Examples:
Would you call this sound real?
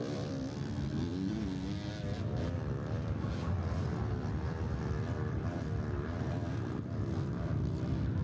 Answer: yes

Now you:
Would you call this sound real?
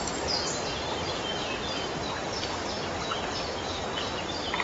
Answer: yes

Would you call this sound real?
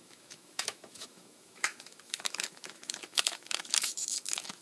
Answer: no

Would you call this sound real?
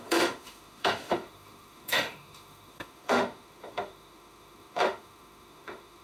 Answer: no